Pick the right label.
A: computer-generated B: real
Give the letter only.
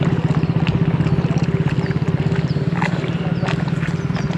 B